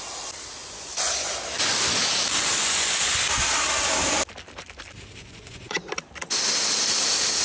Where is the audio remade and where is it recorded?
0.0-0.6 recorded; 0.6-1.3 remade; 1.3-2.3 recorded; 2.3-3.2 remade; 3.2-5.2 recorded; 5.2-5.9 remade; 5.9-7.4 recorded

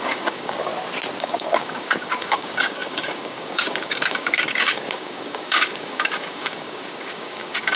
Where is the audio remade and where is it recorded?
0.0-0.7 remade; 0.7-1.2 recorded; 1.2-7.8 remade

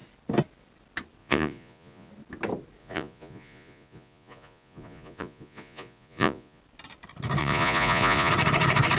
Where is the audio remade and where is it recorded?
0.0-1.2 recorded; 1.2-2.1 remade; 2.1-2.8 recorded; 2.8-6.6 remade; 6.6-7.4 recorded; 7.4-8.3 remade; 8.3-9.0 recorded

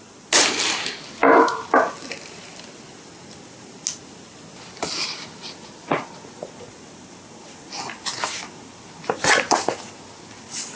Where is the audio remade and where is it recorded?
0.0-10.8 recorded

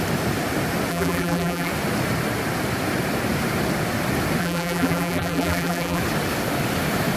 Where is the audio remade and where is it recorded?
0.0-0.9 recorded; 0.9-1.7 remade; 1.7-4.4 recorded; 4.4-6.0 remade; 6.0-7.2 recorded